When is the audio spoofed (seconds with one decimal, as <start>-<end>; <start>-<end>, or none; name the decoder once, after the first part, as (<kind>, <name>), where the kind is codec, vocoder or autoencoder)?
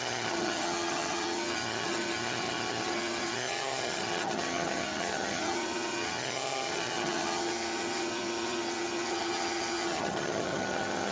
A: 0.0-11.1 (vocoder, HiFi-GAN)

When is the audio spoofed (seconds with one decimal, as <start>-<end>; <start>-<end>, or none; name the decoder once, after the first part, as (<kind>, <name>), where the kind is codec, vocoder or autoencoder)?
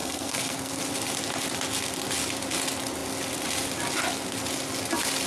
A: 0.0-0.8 (codec, SNAC)